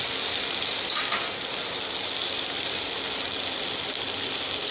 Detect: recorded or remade recorded